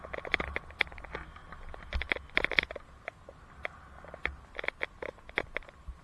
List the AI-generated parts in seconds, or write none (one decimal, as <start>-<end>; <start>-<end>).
none